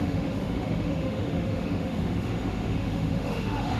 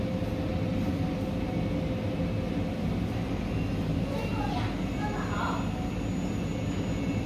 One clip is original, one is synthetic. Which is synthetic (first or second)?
first